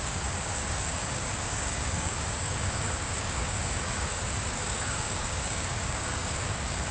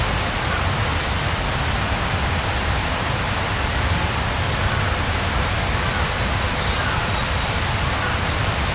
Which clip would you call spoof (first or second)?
first